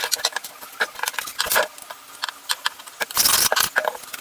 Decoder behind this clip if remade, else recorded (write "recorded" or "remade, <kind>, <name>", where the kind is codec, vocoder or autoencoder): recorded